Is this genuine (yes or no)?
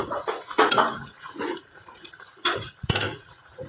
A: no